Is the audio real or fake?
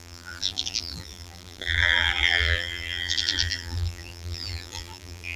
fake